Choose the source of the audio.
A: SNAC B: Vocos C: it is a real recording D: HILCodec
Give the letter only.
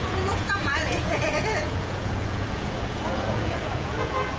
B